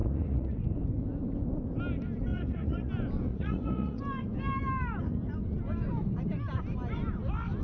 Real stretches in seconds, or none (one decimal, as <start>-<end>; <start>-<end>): 0.6-2.3; 2.9-3.3; 4.0-7.6